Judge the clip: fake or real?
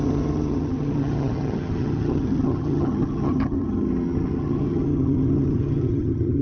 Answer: fake